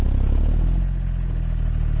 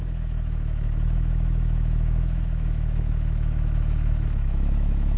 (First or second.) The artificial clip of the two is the second